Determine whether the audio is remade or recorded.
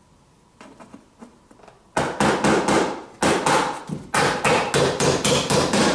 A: recorded